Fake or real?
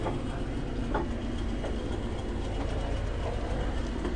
real